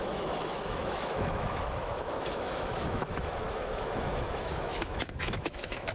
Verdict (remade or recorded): remade